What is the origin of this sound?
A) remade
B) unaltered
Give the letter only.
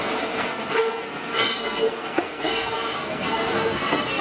A